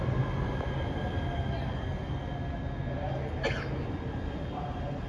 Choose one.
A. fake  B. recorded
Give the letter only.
B